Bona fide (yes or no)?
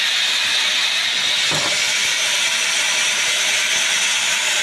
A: yes